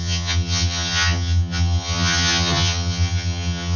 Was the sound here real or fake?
fake